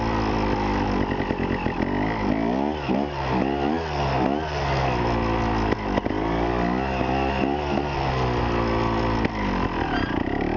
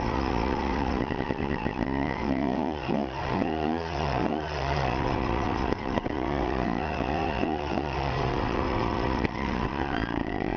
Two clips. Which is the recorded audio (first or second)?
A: first